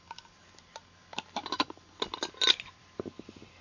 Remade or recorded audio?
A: recorded